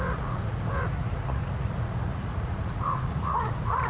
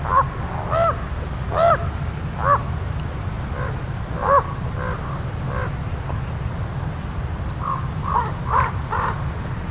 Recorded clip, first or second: second